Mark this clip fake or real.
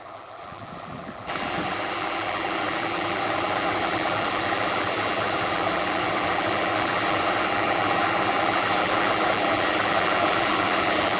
fake